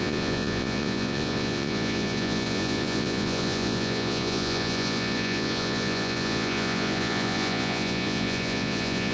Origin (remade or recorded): remade